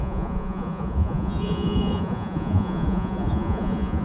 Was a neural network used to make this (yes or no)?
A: yes